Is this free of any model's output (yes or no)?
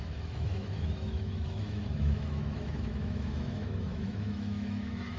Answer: no